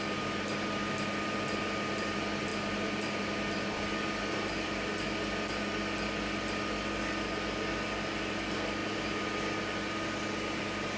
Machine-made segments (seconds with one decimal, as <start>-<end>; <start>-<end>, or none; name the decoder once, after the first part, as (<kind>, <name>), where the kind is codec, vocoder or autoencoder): none